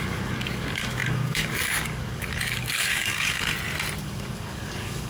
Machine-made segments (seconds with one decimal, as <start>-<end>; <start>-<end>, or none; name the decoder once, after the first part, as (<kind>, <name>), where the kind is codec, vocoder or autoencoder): 0.0-3.5 (codec, DAC); 4.0-5.1